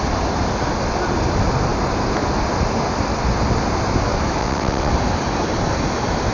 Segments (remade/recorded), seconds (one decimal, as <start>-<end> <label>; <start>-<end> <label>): 0.0-4.4 recorded; 4.4-4.9 remade; 4.9-6.3 recorded